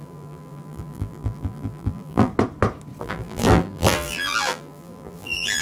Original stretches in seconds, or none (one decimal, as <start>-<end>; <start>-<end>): 2.3-3.0